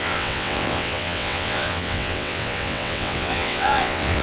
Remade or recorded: remade